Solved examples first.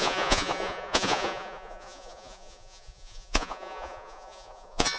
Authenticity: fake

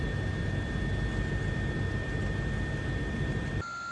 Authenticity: real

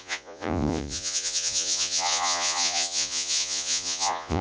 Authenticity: fake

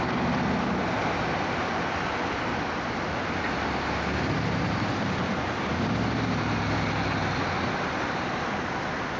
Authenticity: real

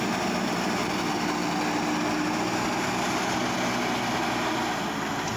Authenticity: real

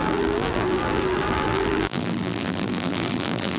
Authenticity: fake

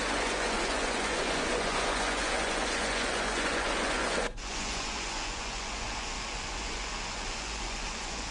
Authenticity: fake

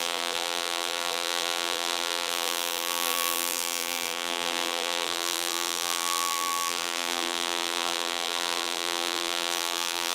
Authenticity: fake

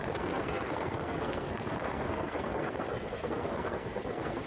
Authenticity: fake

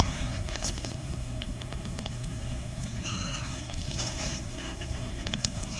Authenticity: fake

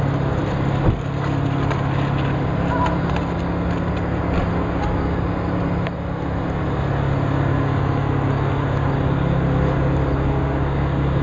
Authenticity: real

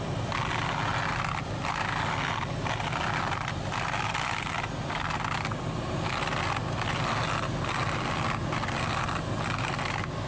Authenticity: real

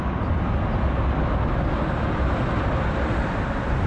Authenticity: real